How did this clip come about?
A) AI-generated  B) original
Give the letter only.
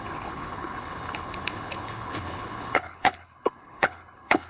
A